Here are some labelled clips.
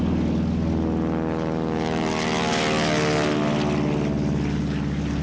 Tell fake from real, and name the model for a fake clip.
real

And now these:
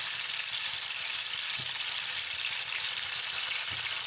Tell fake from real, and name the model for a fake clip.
real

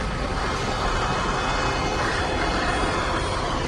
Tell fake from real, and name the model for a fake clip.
real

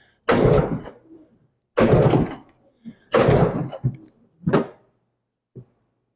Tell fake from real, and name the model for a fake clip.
real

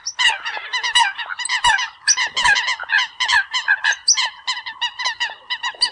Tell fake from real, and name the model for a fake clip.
real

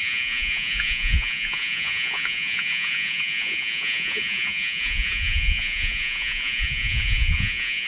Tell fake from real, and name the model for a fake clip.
fake, vocoder, Vocos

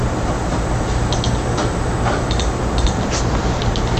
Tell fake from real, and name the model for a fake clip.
real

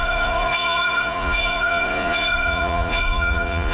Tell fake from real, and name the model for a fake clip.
fake, vocoder, Vocos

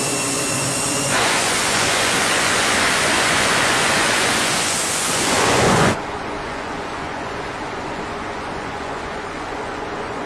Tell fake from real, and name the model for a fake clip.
fake, vocoder, Vocos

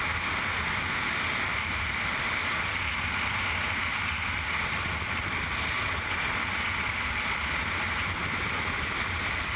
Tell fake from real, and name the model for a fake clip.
real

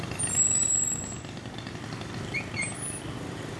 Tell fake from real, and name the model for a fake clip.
real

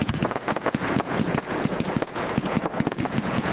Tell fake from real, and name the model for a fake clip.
fake, vocoder, Vocos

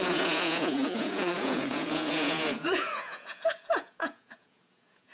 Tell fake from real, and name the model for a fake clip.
fake, vocoder, Vocos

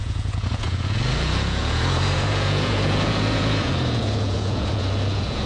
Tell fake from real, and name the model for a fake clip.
fake, vocoder, Vocos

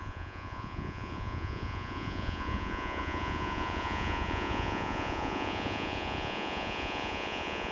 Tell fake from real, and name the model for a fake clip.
fake, vocoder, Vocos